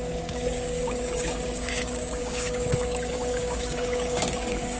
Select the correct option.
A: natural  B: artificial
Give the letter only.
B